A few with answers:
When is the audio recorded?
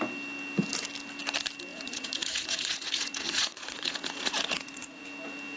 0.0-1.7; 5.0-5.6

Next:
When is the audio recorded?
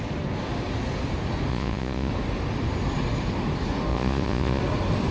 0.0-1.5; 2.1-3.9; 4.6-5.1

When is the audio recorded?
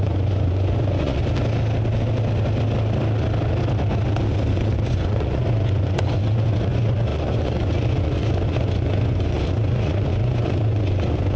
1.2-4.5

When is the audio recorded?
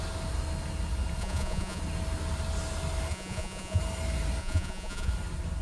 0.0-1.2; 1.8-3.1; 3.8-4.4; 5.1-5.6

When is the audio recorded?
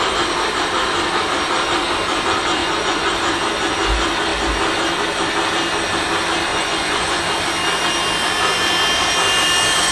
0.0-2.6; 3.1-6.5; 7.2-9.9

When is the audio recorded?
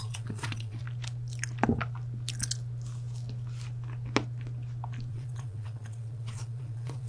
0.8-5.1